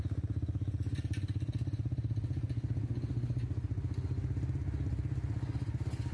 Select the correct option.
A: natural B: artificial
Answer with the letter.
A